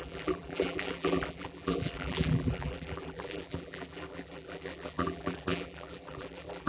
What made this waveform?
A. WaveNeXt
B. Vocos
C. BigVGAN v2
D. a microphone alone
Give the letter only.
C